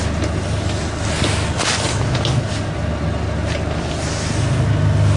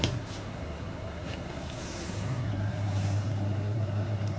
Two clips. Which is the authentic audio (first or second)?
first